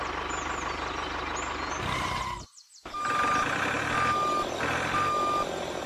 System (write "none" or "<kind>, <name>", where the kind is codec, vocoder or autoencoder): none